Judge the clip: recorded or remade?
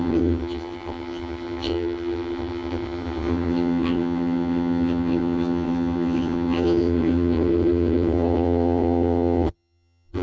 remade